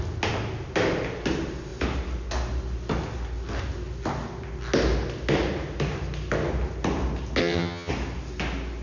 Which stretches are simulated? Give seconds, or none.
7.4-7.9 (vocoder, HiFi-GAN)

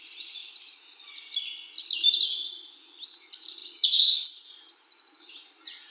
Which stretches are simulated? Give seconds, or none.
none

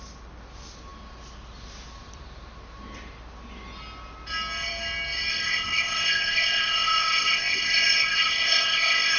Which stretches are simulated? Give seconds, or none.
5.3-9.2 (codec, ZipCodec)

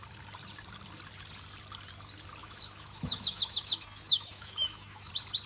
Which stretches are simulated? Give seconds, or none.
2.4-5.1 (autoencoder, DAC-VAE)